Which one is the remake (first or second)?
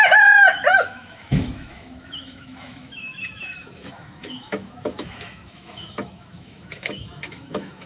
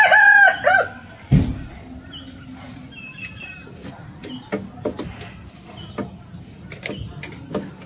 first